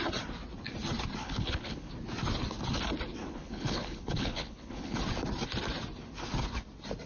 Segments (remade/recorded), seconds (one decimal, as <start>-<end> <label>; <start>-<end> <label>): 0.0-1.2 recorded; 1.2-1.9 remade; 1.9-3.2 recorded; 3.2-5.0 remade; 5.0-7.1 recorded

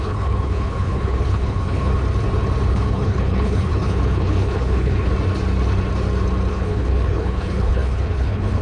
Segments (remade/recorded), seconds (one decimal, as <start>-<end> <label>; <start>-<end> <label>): 0.0-1.9 remade; 1.9-2.7 recorded; 2.7-5.1 remade; 5.1-6.5 recorded; 6.5-8.6 remade

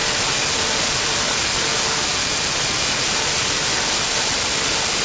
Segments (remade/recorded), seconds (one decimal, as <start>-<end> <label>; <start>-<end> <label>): 0.0-5.0 recorded

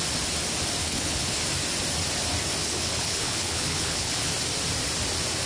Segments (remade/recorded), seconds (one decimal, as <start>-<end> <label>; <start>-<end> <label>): 0.0-0.8 recorded; 0.8-1.4 remade; 1.4-2.6 recorded; 2.6-4.3 remade; 4.3-5.5 recorded

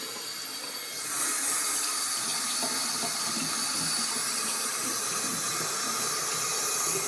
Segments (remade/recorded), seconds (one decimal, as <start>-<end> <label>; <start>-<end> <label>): 0.0-7.1 recorded

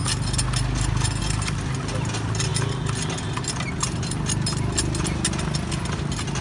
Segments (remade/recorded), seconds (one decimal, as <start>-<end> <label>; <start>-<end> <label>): 0.0-6.4 recorded

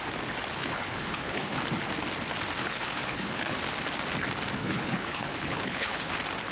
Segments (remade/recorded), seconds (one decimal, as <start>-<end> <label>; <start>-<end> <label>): 0.0-0.6 recorded; 0.6-1.6 remade; 1.6-2.6 recorded; 2.6-3.6 remade; 3.6-4.6 recorded; 4.6-6.1 remade; 6.1-6.5 recorded

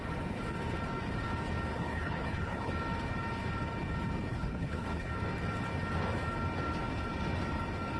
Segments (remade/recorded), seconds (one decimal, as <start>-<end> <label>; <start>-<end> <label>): 0.0-1.7 recorded; 1.7-2.7 remade; 2.7-4.3 recorded; 4.3-5.1 remade; 5.1-8.0 recorded